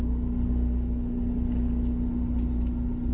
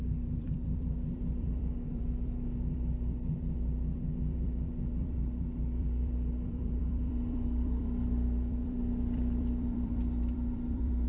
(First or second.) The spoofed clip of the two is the second